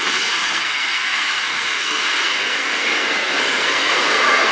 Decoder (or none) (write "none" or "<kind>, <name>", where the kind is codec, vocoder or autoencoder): codec, SNAC